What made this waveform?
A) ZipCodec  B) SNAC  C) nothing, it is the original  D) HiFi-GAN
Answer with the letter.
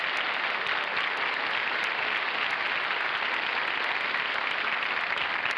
C